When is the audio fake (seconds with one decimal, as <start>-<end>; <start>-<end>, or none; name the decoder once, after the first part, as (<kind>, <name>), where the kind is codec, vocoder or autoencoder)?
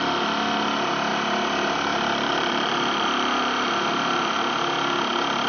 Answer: 1.1-4.4 (vocoder, BigVGAN v2)